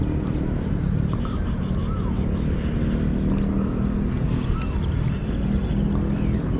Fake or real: real